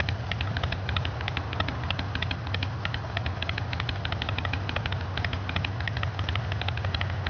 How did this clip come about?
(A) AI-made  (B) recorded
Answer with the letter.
B